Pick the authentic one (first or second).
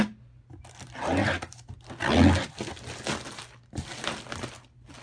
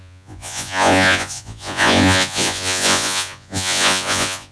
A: first